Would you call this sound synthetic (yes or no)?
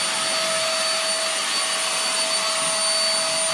no